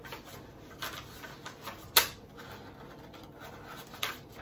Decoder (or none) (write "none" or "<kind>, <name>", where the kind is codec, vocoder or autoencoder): none